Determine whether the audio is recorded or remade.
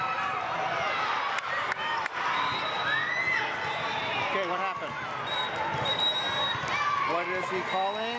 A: recorded